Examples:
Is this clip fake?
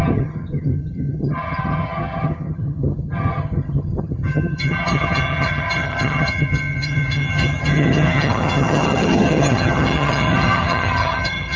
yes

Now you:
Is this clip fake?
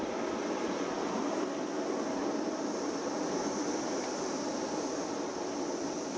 no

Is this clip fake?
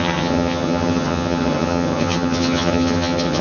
yes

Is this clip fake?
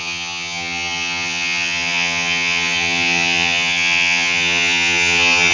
yes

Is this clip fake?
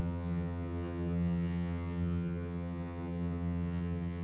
yes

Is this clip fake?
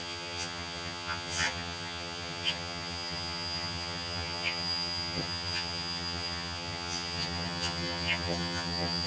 yes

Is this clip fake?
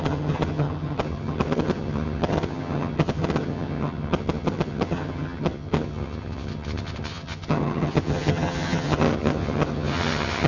yes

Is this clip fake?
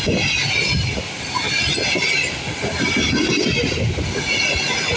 no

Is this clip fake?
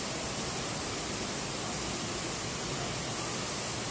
no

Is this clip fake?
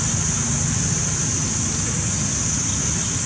no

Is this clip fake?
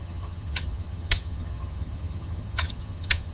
yes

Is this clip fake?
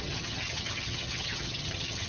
yes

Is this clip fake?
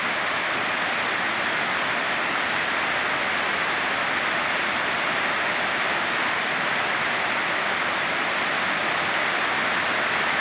no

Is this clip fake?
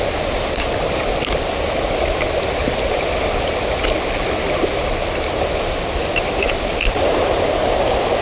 no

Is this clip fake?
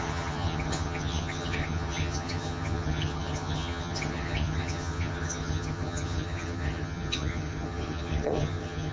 yes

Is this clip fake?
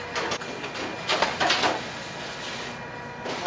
no